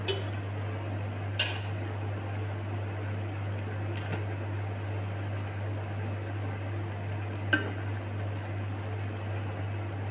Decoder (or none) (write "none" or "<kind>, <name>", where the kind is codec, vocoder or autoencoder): none